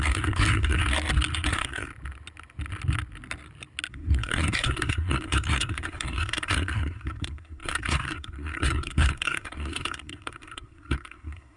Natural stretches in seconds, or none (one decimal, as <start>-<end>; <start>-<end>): 0.8-1.5; 1.9-3.9